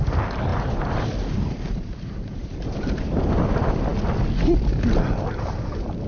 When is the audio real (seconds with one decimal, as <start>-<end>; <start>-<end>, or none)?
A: 0.0-0.5; 3.3-6.1